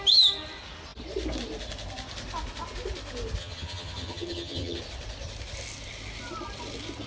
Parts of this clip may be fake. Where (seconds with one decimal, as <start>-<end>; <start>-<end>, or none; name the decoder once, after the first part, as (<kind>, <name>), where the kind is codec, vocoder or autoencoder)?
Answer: 3.4-4.8 (vocoder, HiFi-GAN)